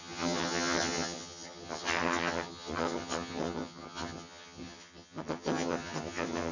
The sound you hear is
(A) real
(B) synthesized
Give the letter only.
B